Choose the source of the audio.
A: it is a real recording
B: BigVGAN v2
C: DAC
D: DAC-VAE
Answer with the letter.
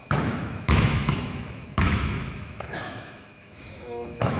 D